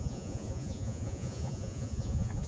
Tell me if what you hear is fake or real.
fake